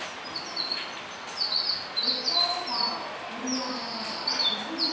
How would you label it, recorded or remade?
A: recorded